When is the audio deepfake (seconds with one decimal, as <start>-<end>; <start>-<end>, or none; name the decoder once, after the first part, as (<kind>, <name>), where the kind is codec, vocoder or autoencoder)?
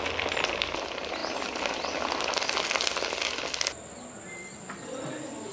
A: none